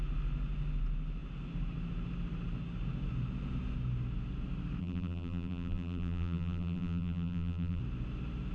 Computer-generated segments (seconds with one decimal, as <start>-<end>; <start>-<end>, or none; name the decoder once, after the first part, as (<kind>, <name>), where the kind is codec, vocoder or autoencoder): 4.8-7.8 (vocoder, BigVGAN v2)